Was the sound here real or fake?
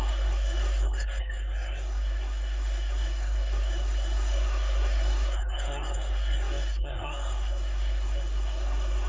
fake